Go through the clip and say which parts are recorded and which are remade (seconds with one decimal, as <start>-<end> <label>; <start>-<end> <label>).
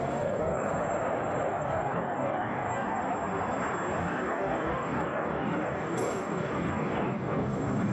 0.0-0.7 remade; 0.7-1.5 recorded; 1.5-3.0 remade; 3.0-4.0 recorded; 4.0-7.9 remade